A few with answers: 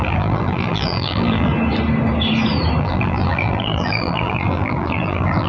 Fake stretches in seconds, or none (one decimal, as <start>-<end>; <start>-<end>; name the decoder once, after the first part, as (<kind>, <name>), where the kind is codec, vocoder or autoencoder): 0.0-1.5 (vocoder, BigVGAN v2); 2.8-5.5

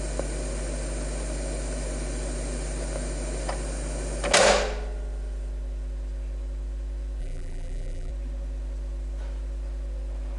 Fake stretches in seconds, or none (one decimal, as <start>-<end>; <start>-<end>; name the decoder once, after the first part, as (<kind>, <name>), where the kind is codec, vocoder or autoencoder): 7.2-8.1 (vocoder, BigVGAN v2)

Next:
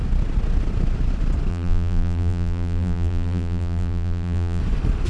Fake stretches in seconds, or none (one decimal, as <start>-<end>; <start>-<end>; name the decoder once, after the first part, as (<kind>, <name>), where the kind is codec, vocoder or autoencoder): 1.5-4.6 (vocoder, BigVGAN v2)

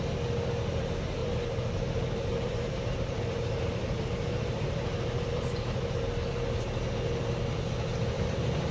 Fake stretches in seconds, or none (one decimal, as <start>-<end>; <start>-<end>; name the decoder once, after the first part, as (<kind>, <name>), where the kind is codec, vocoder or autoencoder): 1.2-6.1 (vocoder, BigVGAN v2)

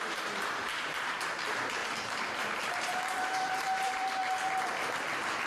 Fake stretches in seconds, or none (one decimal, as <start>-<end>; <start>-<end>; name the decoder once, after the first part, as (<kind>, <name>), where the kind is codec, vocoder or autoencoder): 0.0-4.2 (vocoder, BigVGAN v2)

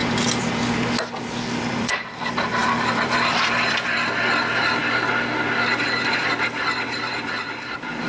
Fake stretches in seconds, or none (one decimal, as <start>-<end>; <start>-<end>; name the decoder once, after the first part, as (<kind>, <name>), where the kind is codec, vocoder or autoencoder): 1.6-4.8 (vocoder, BigVGAN v2); 6.2-8.1